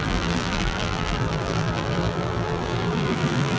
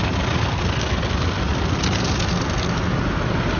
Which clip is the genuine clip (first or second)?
second